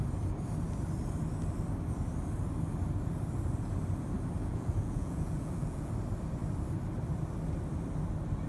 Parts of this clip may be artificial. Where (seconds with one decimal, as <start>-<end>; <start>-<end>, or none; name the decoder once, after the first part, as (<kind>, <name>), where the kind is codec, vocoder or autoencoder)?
4.4-5.9 (vocoder, Vocos)